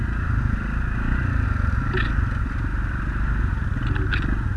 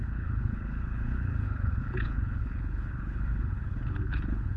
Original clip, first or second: first